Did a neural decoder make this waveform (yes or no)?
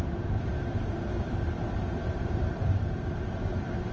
yes